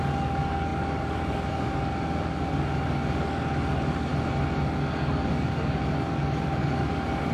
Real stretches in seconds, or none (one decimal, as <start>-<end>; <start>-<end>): 4.1-4.6